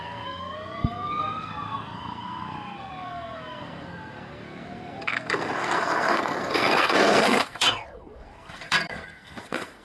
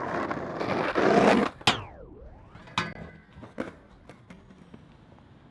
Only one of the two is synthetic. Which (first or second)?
first